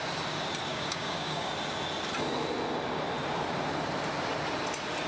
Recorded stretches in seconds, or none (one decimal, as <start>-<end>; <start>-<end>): 0.0-0.7; 1.5-5.1